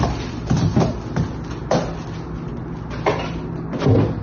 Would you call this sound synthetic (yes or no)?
no